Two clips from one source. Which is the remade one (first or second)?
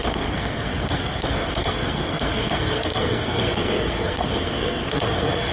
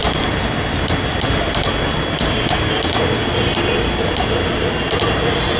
first